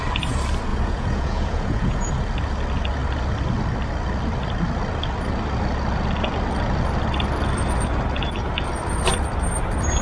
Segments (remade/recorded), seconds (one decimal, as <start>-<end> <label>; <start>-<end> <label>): 0.0-0.7 recorded; 0.7-2.1 remade; 2.1-10.0 recorded